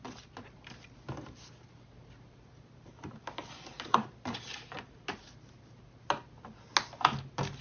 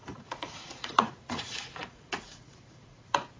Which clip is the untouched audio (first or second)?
first